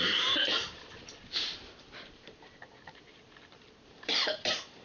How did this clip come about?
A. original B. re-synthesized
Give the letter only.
B